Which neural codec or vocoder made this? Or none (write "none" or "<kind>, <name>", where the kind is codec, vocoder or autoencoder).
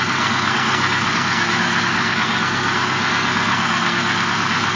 codec, SNAC